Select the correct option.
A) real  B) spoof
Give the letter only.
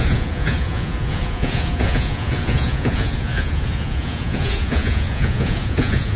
B